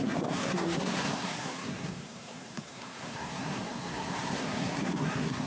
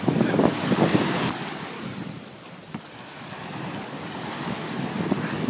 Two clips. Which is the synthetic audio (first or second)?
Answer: first